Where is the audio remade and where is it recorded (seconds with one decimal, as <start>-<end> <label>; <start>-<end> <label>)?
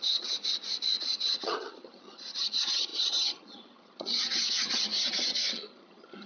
0.0-0.4 remade; 0.4-1.0 recorded; 1.0-6.3 remade